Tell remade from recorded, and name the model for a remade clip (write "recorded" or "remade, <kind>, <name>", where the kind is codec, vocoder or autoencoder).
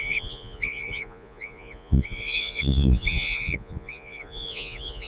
remade, vocoder, Vocos